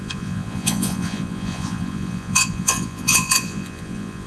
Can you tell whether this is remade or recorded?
remade